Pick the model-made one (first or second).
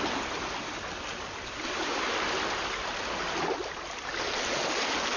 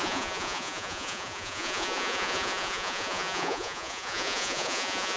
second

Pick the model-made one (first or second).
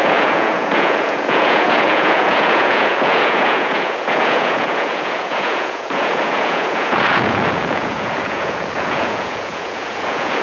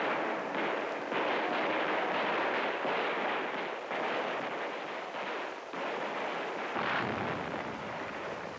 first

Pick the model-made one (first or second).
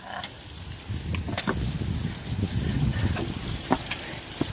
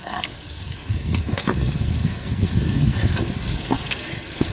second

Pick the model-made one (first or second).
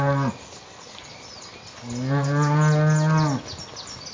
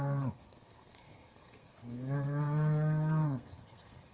second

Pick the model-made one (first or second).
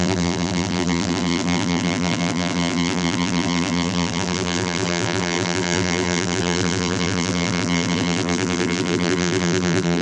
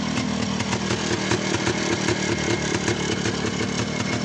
first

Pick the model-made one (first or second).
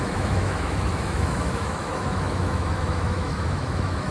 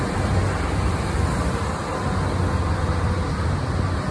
first